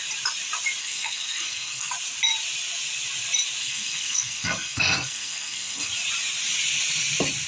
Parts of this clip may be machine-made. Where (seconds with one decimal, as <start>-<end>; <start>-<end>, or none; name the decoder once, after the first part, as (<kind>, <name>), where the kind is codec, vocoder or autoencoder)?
0.8-1.9 (codec, SNAC); 3.6-5.9